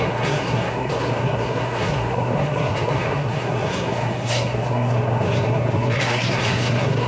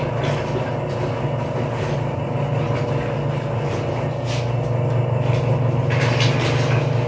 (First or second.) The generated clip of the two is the first